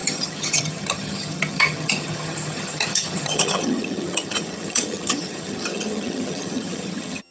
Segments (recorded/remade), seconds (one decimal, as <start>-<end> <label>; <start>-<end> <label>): 0.0-7.3 remade